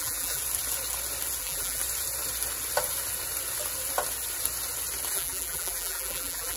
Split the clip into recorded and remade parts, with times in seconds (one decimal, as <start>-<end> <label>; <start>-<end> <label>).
0.0-0.4 remade; 0.4-1.4 recorded; 1.4-1.8 remade; 1.8-5.1 recorded; 5.1-6.6 remade